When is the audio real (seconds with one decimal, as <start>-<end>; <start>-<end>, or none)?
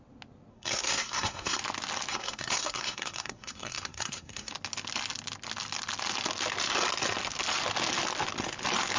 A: 0.0-0.5; 1.6-2.1; 4.5-9.0